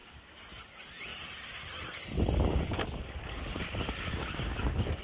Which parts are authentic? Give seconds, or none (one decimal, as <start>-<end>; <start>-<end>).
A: 0.6-5.0